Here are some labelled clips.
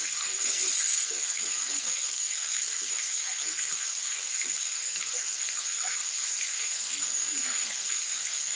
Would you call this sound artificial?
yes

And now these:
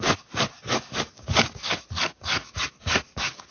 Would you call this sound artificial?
yes